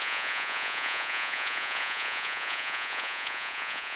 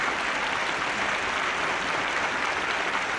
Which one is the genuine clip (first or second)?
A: second